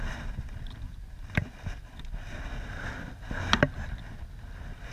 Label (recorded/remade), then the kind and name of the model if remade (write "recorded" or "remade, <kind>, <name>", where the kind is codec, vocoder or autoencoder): recorded